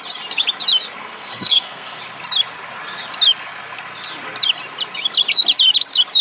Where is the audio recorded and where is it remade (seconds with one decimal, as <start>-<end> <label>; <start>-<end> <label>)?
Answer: 0.0-1.0 recorded; 1.0-2.0 remade; 2.0-6.2 recorded